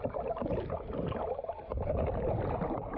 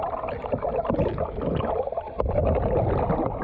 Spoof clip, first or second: first